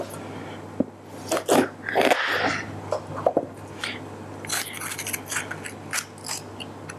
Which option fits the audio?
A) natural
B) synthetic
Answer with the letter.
A